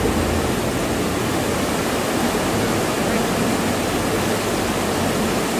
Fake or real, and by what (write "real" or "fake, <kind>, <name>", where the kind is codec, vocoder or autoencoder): real